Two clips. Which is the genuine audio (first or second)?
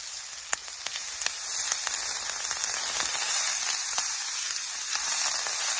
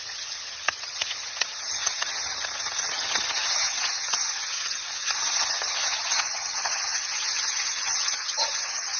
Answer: first